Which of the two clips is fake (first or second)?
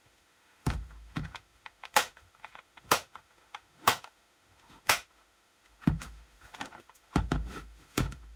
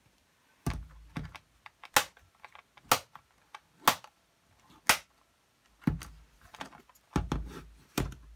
first